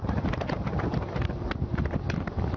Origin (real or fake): real